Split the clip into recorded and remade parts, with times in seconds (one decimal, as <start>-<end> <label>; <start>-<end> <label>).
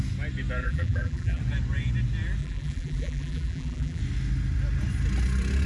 0.0-0.6 recorded; 0.6-1.4 remade; 1.4-2.4 recorded; 2.4-4.0 remade; 4.0-5.7 recorded